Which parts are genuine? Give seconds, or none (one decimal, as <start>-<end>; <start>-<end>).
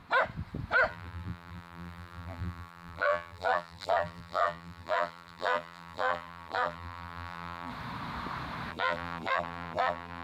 0.0-0.9; 7.7-8.7